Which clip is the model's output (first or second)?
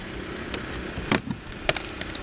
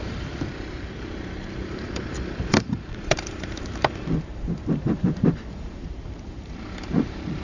second